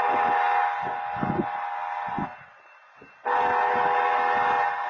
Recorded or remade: recorded